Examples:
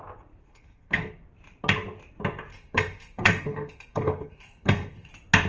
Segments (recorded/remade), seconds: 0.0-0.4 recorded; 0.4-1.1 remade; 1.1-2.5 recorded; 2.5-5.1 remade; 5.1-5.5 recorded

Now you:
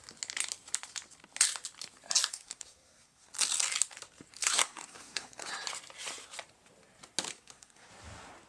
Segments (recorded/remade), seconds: 0.0-2.3 recorded; 2.3-3.3 remade; 3.3-4.4 recorded; 4.4-5.5 remade; 5.5-7.3 recorded; 7.3-7.9 remade; 7.9-8.5 recorded

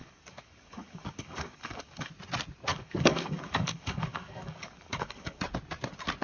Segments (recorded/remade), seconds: 0.0-2.1 remade; 2.1-2.7 recorded; 2.7-5.4 remade; 5.4-6.2 recorded

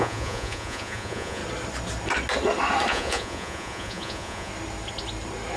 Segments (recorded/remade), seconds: 0.0-1.4 remade; 1.4-2.9 recorded; 2.9-4.5 remade; 4.5-5.6 recorded

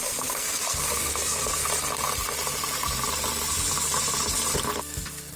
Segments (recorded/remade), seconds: 0.0-1.6 remade; 1.6-4.8 recorded; 4.8-5.4 remade